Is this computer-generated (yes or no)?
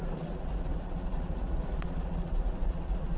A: yes